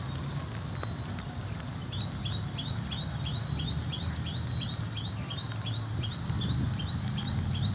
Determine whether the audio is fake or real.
real